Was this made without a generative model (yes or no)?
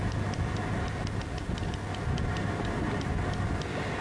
yes